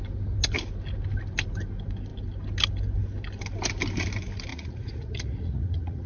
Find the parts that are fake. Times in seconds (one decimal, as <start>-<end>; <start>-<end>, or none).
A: 4.5-6.1